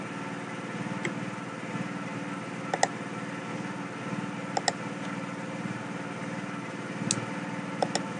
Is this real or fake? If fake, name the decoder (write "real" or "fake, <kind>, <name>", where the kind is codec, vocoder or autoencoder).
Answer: real